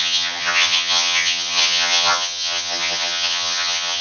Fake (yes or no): yes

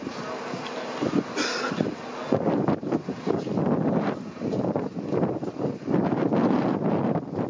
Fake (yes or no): no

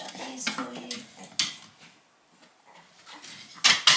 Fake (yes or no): no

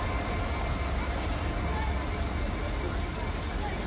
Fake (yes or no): no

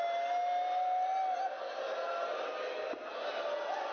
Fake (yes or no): no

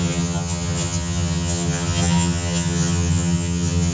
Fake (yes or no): yes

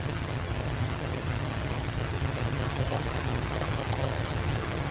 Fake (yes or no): yes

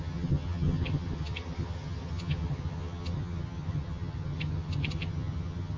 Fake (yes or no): yes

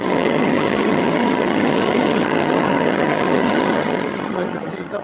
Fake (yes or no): yes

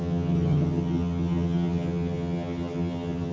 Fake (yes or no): yes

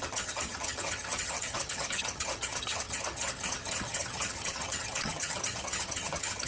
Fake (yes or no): yes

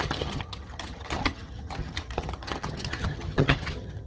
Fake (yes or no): yes